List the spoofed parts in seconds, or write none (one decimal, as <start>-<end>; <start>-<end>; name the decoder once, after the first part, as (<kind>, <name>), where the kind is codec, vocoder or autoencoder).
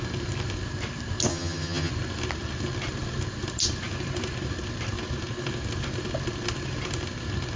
1.3-1.9 (vocoder, HiFi-GAN)